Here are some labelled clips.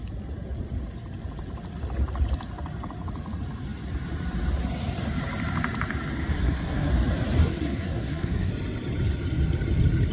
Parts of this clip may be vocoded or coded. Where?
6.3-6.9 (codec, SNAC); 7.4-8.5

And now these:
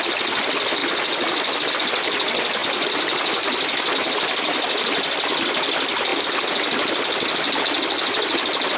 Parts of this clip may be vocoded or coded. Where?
0.8-1.7 (vocoder, BigVGAN v2); 2.6-4.7; 6.1-7.6

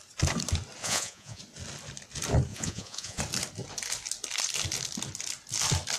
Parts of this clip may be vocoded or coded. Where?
0.8-1.4 (vocoder, Vocos); 2.5-3.2

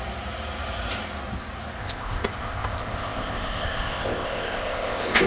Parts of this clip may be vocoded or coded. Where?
1.8-5.3 (codec, ZipCodec)

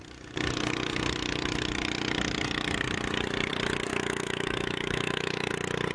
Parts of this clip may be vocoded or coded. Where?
3.9-5.5 (autoencoder, DAC-VAE)

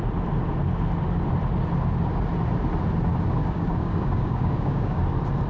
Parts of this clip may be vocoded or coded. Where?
3.4-5.0 (codec, DAC)

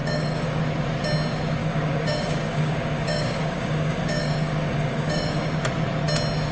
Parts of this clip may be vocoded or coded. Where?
0.0-0.6 (codec, DAC); 1.6-5.4